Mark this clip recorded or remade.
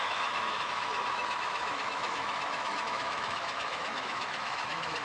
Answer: remade